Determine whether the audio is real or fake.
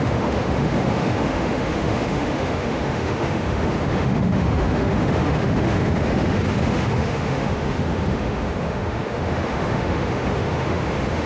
fake